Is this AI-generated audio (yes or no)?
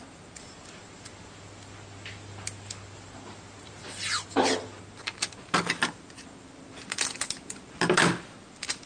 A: no